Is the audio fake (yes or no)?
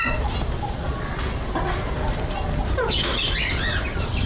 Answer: yes